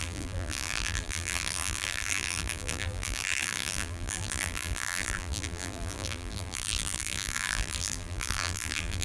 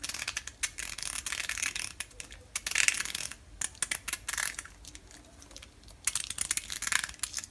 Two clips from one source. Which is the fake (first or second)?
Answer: first